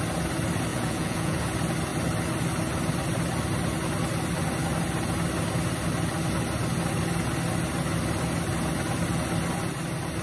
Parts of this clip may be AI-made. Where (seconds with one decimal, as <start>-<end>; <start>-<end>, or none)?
0.7-1.4